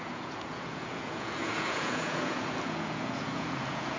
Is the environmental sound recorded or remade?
remade